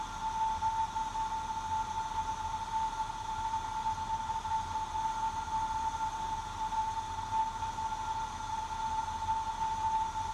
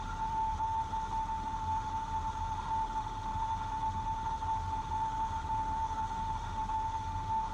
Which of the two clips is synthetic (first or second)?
second